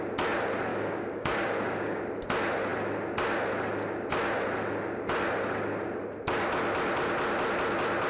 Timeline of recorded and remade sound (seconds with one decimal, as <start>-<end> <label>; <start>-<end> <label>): 0.0-0.7 recorded; 0.7-2.0 remade; 2.0-8.1 recorded